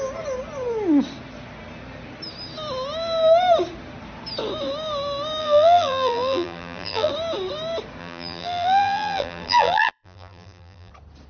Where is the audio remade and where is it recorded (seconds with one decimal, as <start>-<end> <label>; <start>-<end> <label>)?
0.0-5.4 recorded; 5.4-7.1 remade; 7.1-8.0 recorded; 8.0-10.9 remade; 10.9-11.3 recorded